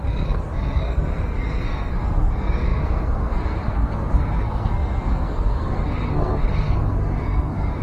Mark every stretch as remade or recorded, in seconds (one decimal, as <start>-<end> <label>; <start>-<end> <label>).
0.0-7.8 remade